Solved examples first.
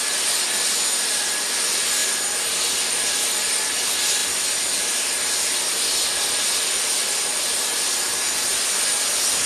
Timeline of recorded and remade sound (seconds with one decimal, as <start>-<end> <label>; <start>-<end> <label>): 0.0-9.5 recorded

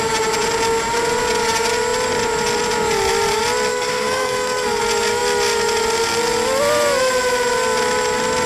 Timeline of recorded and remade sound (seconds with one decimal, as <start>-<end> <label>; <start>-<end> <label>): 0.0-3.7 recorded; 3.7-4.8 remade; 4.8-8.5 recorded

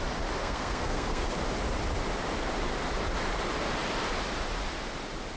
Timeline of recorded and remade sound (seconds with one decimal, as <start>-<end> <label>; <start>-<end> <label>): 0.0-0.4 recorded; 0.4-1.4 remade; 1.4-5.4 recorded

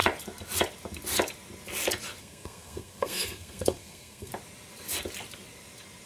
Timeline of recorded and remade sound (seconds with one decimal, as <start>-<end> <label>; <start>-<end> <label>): 0.0-2.2 recorded; 2.2-4.3 remade; 4.3-6.1 recorded

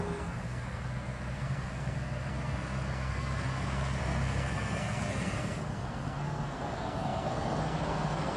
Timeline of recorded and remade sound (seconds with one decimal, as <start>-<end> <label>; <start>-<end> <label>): 0.0-8.4 remade

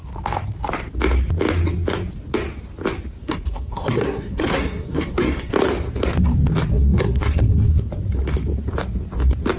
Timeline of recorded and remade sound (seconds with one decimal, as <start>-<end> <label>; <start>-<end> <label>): 0.0-3.2 recorded; 3.2-5.5 remade; 5.5-6.7 recorded; 6.7-7.9 remade; 7.9-9.6 recorded

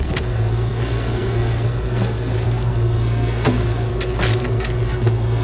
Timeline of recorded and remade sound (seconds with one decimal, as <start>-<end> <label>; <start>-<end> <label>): 0.0-5.4 remade